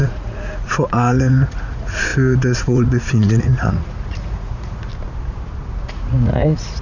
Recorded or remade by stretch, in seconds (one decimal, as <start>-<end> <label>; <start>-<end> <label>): 0.0-4.9 remade; 4.9-5.9 recorded; 5.9-6.8 remade